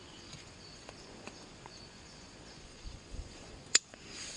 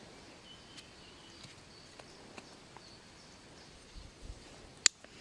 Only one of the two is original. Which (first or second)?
second